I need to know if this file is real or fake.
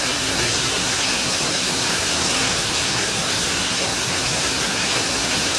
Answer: fake